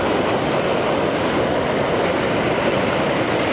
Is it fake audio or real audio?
real